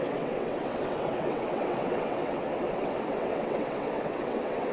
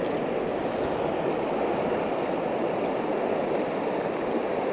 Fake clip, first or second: first